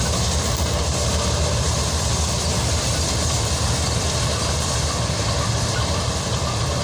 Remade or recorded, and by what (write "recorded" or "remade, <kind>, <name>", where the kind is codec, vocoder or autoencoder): recorded